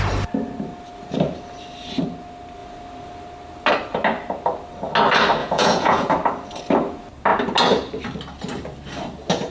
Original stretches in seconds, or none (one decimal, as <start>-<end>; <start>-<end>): 0.0-5.4; 6.1-9.5

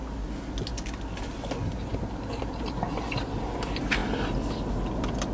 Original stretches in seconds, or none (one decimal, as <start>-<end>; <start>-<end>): 0.0-5.3

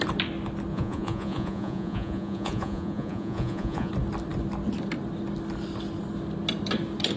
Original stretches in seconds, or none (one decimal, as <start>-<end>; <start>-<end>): 0.0-0.7; 3.9-7.2